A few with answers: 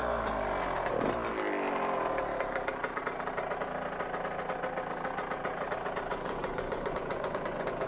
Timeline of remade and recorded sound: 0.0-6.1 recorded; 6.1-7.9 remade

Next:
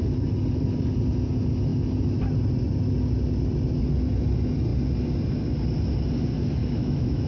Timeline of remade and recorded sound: 0.0-6.6 recorded; 6.6-7.3 remade

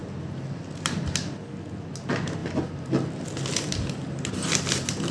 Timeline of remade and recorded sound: 0.0-5.1 recorded

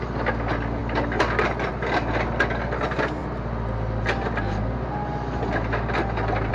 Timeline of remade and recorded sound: 0.0-6.5 recorded

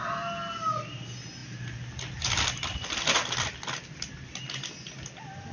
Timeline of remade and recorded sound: 0.0-5.5 recorded

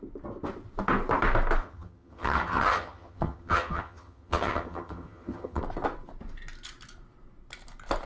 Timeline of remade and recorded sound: 0.0-1.6 recorded; 1.6-5.6 remade; 5.6-8.1 recorded

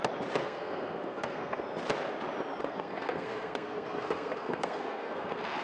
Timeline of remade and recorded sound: 0.0-0.4 recorded; 0.4-1.6 remade; 1.6-2.6 recorded; 2.6-5.6 remade

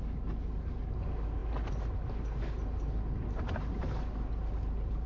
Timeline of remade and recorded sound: 0.0-5.1 recorded